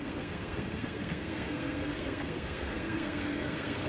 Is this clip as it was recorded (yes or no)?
no